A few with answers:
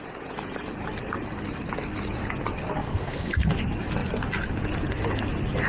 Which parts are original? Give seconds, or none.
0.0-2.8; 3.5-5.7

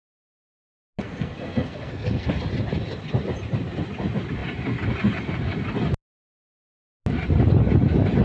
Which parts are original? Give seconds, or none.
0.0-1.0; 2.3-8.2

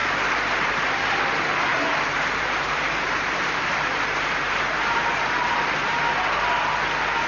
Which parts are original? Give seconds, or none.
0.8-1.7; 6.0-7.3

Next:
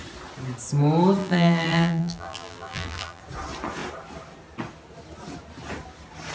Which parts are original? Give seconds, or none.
0.0-1.2; 3.2-6.3

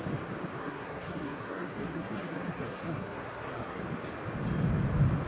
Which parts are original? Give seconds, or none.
0.0-0.6; 3.8-5.3